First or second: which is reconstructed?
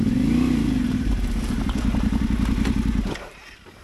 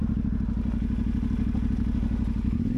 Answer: first